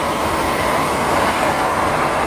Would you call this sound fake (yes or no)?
no